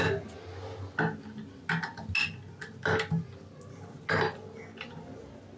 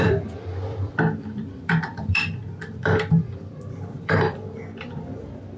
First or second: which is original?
first